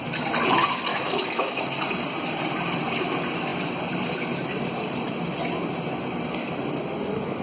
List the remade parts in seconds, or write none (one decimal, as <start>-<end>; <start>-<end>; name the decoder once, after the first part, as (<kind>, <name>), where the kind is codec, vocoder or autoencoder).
0.9-1.6 (autoencoder, DAC-VAE)